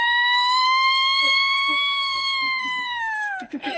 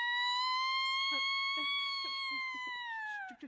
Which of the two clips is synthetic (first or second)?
first